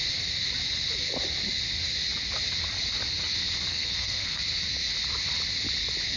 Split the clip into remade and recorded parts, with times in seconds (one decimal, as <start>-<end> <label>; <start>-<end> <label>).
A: 0.0-3.7 recorded; 3.7-4.4 remade; 4.4-6.2 recorded